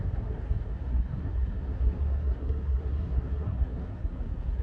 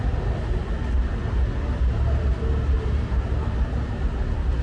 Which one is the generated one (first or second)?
first